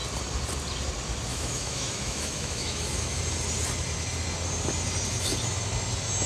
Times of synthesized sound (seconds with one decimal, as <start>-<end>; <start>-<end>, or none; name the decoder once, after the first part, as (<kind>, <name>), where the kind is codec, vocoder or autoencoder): 1.3-3.2 (autoencoder, DAC-VAE)